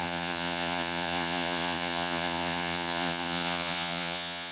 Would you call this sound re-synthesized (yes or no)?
yes